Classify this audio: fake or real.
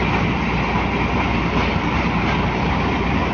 real